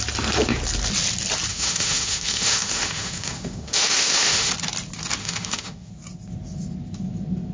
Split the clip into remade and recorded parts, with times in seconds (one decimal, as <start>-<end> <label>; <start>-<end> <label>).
0.0-1.5 recorded; 1.5-4.5 remade; 4.5-5.2 recorded; 5.2-5.9 remade; 5.9-7.5 recorded

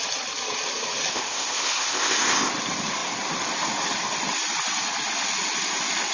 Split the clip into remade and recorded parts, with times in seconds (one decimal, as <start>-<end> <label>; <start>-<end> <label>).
0.0-1.1 recorded; 1.1-2.5 remade; 2.5-6.1 recorded

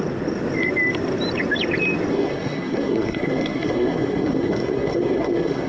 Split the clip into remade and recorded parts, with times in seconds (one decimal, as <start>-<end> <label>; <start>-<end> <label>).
0.0-2.1 recorded; 2.1-5.7 remade

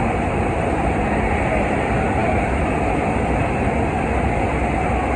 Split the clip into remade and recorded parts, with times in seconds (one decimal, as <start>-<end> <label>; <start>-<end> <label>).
0.0-5.2 recorded